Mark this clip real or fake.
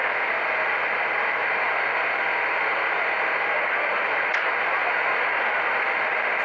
real